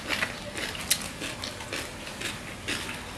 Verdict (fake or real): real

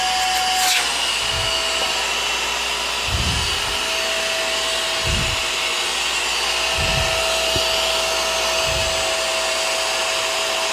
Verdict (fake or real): real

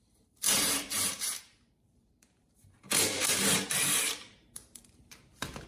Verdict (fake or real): fake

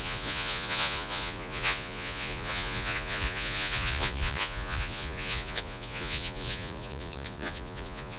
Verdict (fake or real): fake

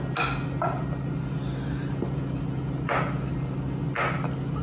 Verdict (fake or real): real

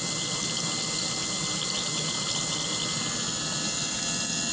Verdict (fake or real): real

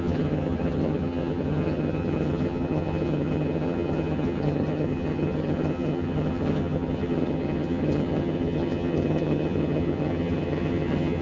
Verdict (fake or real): fake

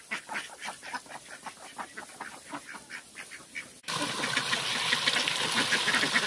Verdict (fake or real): real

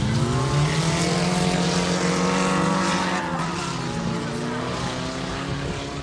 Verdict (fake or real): real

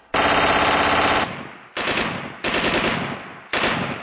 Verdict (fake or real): real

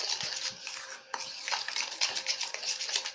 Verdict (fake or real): real